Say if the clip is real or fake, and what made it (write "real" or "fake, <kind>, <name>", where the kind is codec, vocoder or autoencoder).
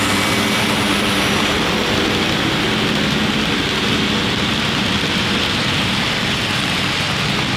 real